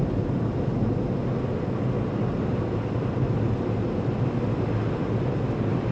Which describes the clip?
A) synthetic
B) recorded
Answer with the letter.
B